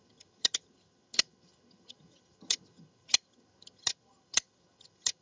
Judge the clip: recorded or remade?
remade